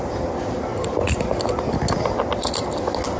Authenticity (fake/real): real